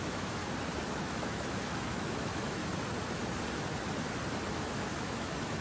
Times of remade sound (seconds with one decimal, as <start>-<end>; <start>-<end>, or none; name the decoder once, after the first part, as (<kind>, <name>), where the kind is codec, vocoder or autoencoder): 0.0-0.4 (autoencoder, DAC-VAE); 0.9-2.6; 4.6-5.6